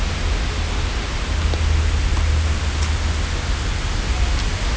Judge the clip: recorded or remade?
recorded